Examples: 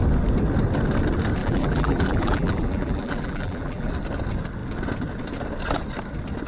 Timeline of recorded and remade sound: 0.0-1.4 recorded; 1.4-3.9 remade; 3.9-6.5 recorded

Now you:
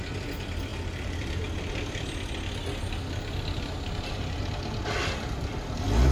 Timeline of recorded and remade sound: 0.0-6.1 recorded

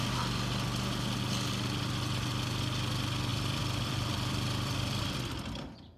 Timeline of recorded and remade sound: 0.0-3.3 recorded; 3.3-5.0 remade; 5.0-6.0 recorded

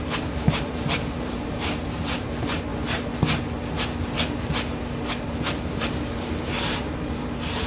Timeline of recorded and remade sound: 0.0-2.7 remade; 2.7-5.1 recorded; 5.1-7.7 remade

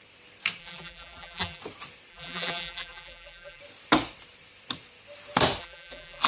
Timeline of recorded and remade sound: 0.0-0.6 recorded; 0.6-1.6 remade; 1.6-2.1 recorded; 2.1-3.6 remade; 3.6-5.6 recorded; 5.6-6.3 remade